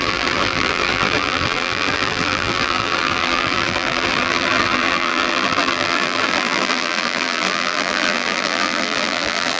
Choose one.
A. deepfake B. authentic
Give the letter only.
A